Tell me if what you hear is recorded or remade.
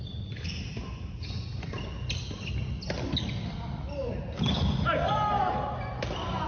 recorded